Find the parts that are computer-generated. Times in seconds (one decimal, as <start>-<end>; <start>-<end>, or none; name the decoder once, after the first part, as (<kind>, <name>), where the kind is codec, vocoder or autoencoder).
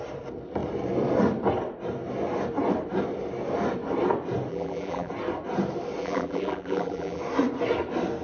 4.5-5.1 (vocoder, BigVGAN v2); 6.0-7.2